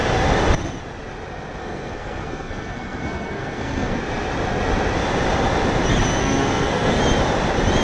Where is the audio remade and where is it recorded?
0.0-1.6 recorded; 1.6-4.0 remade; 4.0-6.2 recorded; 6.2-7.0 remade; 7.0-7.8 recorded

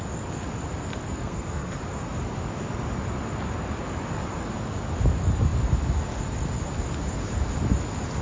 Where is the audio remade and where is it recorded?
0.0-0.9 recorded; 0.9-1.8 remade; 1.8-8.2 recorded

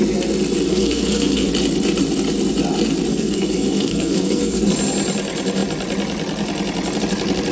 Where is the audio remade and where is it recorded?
0.0-0.7 recorded; 0.7-1.5 remade; 1.5-3.1 recorded; 3.1-4.6 remade; 4.6-7.5 recorded

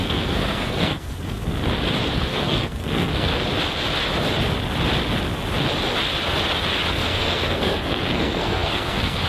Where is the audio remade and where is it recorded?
0.0-1.5 remade; 1.5-2.1 recorded; 2.1-3.3 remade; 3.3-6.9 recorded; 6.9-9.3 remade

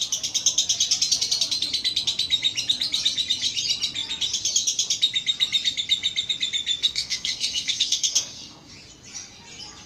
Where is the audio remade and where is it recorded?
0.0-6.8 recorded; 6.8-8.7 remade; 8.7-9.9 recorded

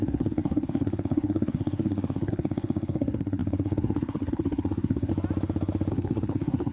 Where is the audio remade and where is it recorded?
0.0-5.1 remade; 5.1-5.9 recorded; 5.9-6.7 remade

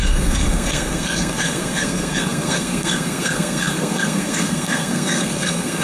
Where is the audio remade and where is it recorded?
0.0-5.8 remade